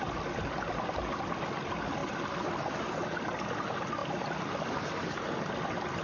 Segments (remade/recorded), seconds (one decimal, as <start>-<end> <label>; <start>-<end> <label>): 0.0-6.0 recorded